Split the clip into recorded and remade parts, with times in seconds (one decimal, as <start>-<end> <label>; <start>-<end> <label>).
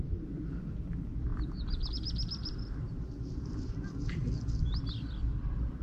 0.0-4.2 remade; 4.2-4.9 recorded; 4.9-5.8 remade